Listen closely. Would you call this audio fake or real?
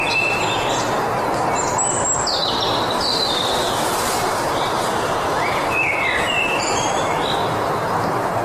real